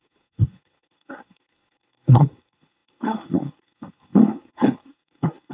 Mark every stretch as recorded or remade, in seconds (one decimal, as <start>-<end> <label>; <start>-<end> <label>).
0.0-5.5 remade